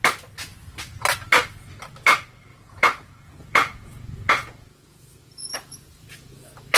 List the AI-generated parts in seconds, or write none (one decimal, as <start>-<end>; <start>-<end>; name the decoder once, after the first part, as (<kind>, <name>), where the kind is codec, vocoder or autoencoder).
2.5-6.8 (vocoder, Vocos)